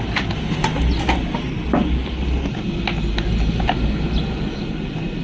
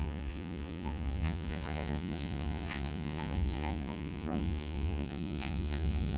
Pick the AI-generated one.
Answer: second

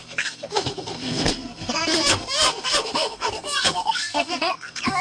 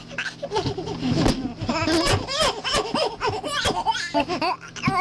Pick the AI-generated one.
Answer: first